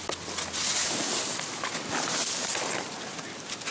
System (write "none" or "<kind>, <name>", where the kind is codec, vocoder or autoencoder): none